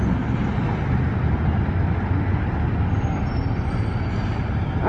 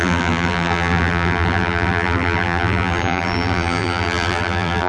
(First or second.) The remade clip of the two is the second